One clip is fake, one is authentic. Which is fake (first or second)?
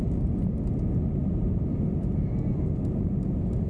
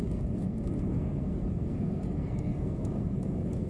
second